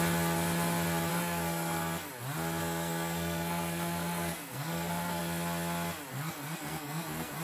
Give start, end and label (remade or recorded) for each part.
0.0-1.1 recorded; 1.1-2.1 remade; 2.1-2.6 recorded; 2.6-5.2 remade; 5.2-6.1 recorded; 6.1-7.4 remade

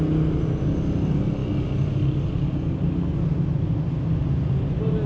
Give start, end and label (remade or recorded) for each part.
0.0-5.1 recorded